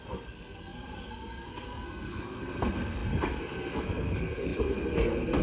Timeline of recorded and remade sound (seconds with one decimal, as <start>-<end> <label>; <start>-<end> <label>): 0.0-5.4 remade